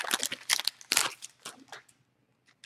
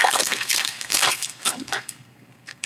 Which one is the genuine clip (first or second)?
first